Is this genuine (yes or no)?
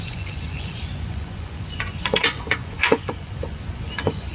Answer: no